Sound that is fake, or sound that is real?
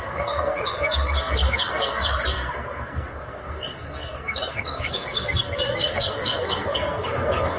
fake